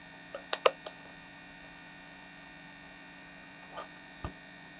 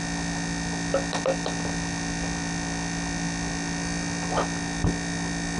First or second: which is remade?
first